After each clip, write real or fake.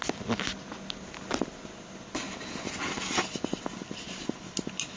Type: real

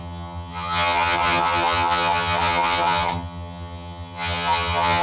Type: fake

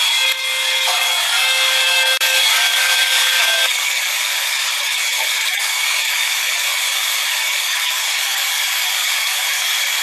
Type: fake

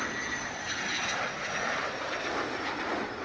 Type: fake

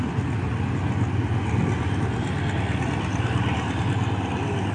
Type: real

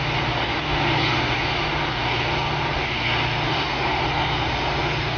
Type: real